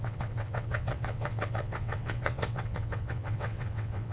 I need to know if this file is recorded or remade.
remade